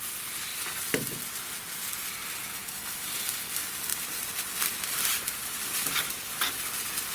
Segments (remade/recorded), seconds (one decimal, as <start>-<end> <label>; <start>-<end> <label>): 0.0-0.5 remade; 0.5-2.9 recorded; 2.9-3.9 remade; 3.9-5.6 recorded; 5.6-7.1 remade